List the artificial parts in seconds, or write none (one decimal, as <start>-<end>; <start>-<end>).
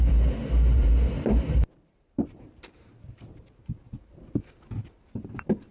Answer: 0.8-4.2